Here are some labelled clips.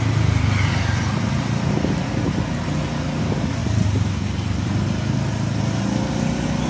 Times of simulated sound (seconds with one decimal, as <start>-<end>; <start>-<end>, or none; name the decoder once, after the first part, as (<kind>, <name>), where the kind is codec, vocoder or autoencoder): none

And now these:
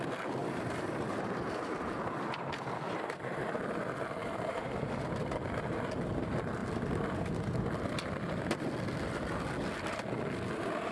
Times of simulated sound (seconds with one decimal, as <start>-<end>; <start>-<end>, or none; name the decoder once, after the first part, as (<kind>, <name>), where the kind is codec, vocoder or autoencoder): 0.4-3.4 (vocoder, BigVGAN v2); 4.2-5.2

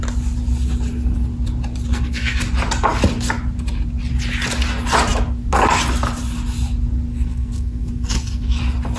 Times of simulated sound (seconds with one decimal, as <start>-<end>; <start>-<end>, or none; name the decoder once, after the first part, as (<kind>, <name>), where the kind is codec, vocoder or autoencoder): 1.9-2.4 (codec, SNAC); 7.1-8.6